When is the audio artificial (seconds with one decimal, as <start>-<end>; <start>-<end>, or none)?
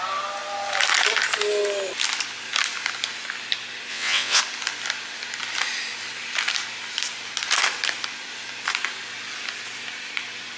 3.9-4.4